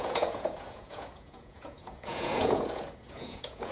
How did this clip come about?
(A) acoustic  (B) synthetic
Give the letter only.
B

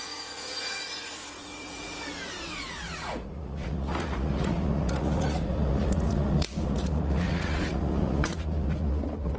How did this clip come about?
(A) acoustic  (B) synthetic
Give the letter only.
B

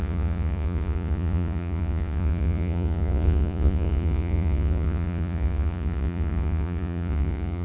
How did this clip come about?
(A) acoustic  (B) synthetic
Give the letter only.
B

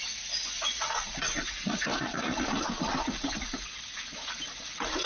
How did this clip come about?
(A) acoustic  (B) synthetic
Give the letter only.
B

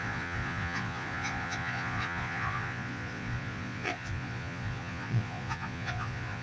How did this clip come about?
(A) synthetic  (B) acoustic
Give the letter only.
A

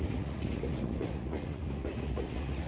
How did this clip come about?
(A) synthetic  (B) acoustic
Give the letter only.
A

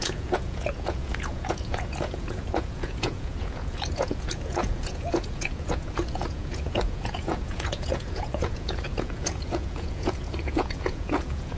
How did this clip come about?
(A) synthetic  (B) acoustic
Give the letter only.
A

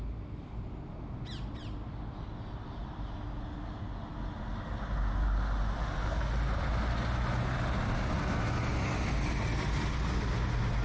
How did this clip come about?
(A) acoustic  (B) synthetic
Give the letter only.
A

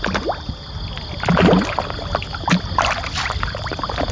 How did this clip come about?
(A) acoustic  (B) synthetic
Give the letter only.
A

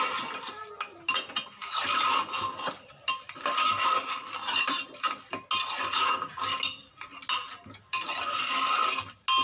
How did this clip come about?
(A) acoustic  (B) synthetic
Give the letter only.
A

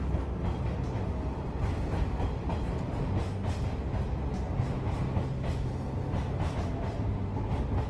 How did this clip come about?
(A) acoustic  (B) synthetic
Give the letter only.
A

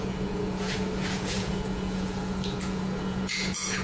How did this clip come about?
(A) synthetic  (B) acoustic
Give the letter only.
A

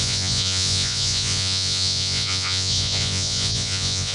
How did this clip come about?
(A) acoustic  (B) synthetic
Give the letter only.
B